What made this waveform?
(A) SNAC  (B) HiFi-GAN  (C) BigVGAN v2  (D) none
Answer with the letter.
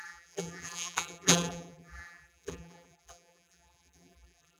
C